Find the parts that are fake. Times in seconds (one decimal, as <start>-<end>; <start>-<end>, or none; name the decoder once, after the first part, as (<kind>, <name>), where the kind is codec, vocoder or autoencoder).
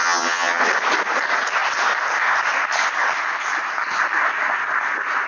0.0-0.6 (vocoder, HiFi-GAN)